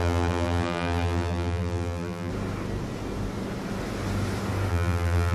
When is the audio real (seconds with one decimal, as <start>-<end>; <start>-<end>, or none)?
2.3-4.7